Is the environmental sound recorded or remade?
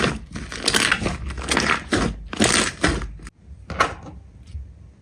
recorded